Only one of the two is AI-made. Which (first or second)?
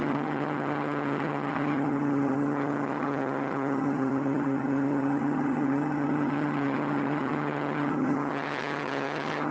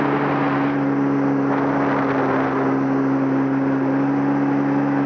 first